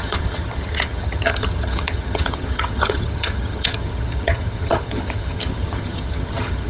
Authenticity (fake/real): fake